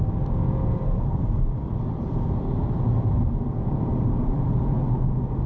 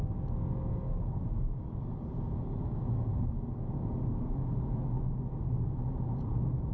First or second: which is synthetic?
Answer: first